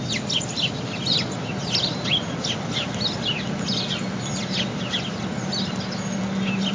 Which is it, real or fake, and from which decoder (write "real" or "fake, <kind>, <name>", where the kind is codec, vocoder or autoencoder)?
real